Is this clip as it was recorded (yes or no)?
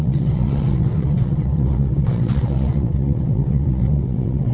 no